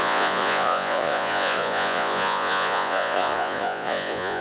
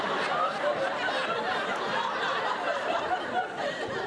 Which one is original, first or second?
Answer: second